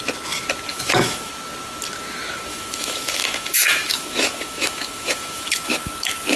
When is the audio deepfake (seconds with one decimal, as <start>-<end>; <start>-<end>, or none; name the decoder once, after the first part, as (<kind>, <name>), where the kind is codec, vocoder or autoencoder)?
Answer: 0.7-1.3 (autoencoder, DAC-VAE); 2.5-6.4